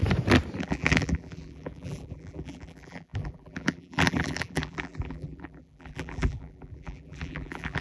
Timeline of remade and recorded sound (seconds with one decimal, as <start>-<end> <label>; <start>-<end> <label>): 0.0-0.6 recorded; 0.6-7.8 remade